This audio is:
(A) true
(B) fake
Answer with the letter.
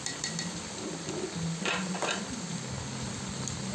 A